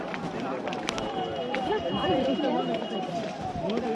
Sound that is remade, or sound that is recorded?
remade